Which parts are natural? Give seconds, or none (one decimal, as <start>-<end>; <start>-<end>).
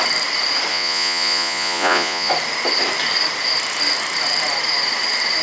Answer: 0.0-0.7; 2.3-5.4